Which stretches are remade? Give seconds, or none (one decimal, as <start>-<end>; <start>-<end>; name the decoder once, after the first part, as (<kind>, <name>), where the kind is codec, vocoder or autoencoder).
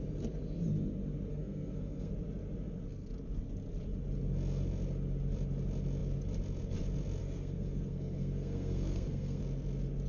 1.3-2.1 (codec, SNAC); 7.2-9.4